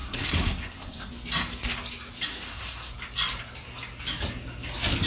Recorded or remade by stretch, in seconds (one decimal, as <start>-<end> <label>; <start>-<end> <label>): 0.0-1.1 remade; 1.1-2.3 recorded; 2.3-2.9 remade; 2.9-5.1 recorded